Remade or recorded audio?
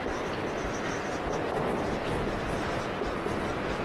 recorded